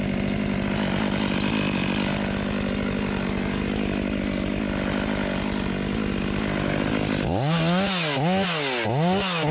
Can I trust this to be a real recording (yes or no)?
yes